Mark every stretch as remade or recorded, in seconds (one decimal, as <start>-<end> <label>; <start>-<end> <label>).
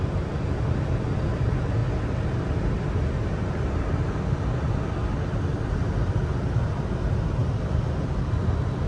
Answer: 0.0-1.8 remade; 1.8-3.7 recorded; 3.7-8.9 remade